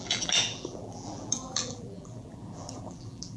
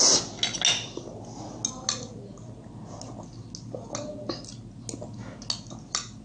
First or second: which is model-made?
first